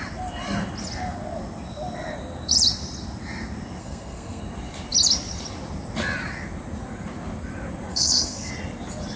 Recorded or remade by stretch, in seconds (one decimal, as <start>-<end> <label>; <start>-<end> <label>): 0.0-3.8 recorded; 3.8-4.4 remade; 4.4-7.9 recorded; 7.9-8.5 remade; 8.5-9.2 recorded